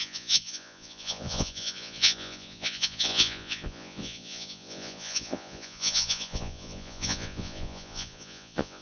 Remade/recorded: remade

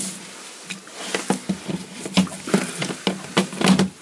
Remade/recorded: recorded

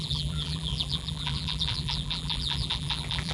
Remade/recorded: remade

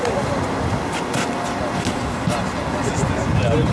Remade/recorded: recorded